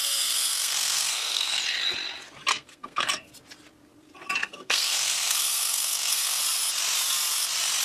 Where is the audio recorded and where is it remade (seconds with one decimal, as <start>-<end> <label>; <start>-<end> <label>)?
0.0-1.6 remade; 1.6-2.5 recorded; 2.5-3.3 remade; 3.3-4.4 recorded; 4.4-6.4 remade; 6.4-7.8 recorded